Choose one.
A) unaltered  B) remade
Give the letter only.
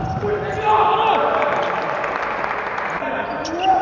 A